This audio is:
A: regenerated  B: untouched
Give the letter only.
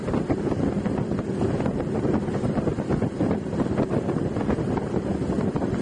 A